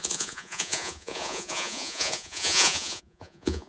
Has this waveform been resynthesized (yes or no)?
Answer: yes